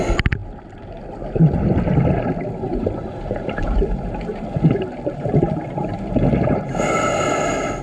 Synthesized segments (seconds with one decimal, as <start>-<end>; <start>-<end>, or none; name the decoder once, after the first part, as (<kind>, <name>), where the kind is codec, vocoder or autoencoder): 2.7-6.8 (vocoder, BigVGAN v2)